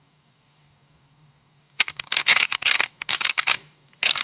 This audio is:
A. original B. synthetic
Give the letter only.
B